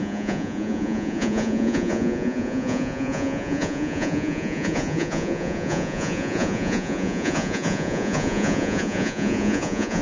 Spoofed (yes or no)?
yes